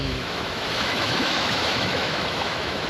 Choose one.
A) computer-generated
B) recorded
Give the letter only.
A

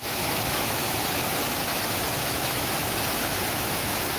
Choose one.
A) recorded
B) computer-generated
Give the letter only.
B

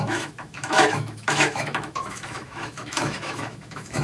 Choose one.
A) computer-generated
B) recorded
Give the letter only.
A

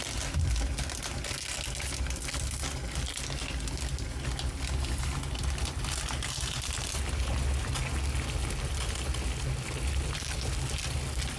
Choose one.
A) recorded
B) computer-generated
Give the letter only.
A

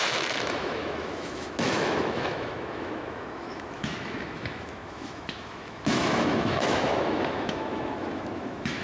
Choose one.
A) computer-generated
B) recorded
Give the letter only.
A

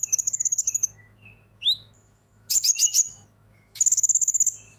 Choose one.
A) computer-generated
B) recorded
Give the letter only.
A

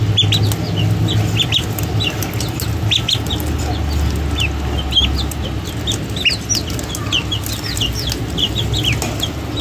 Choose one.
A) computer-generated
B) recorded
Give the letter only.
B